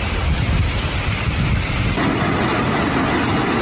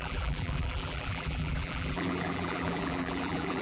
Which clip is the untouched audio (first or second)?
first